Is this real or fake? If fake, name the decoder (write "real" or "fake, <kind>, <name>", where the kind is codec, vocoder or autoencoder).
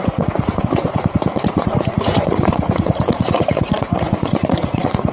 fake, vocoder, Vocos